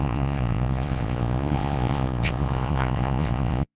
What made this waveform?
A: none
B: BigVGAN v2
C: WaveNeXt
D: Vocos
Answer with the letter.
D